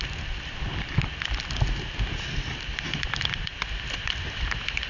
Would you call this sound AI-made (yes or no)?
no